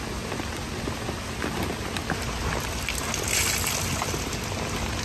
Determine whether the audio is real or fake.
real